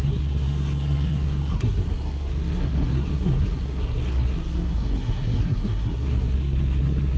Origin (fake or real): fake